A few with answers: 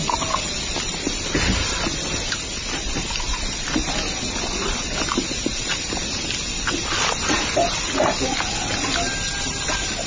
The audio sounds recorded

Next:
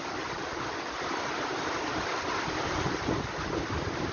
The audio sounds recorded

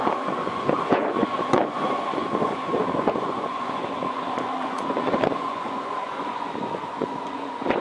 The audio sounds remade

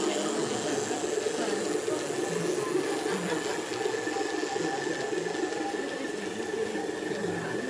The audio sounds recorded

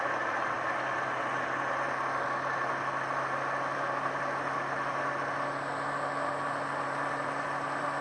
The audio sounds recorded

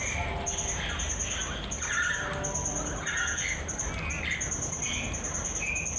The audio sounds recorded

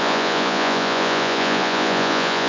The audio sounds remade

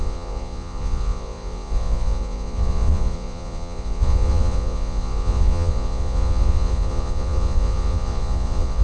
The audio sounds remade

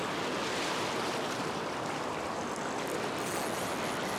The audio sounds recorded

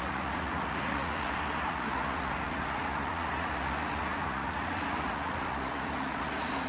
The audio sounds remade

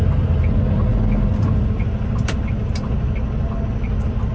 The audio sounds recorded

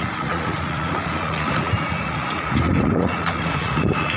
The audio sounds remade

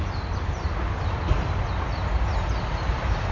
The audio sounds recorded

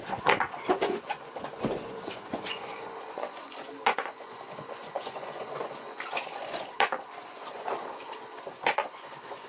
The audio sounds remade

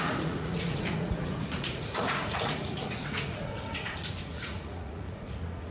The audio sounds remade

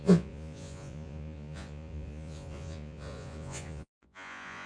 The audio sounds remade